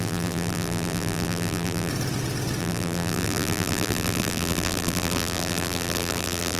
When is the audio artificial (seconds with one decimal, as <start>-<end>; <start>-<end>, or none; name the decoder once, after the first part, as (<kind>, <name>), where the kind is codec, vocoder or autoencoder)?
0.0-1.9 (vocoder, BigVGAN v2); 2.6-6.6